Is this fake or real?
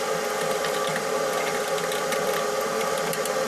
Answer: real